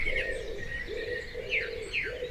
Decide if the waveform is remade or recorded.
recorded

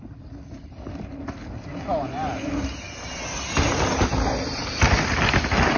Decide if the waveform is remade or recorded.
recorded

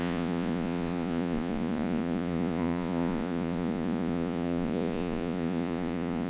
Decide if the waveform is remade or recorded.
remade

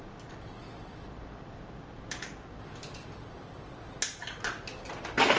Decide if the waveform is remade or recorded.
recorded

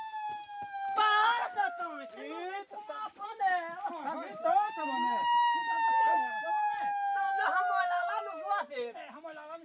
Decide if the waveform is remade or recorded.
recorded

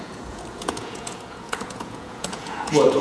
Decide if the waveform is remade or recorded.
remade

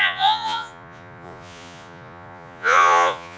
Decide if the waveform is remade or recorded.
remade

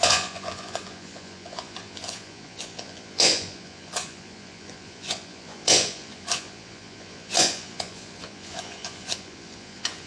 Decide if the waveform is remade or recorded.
remade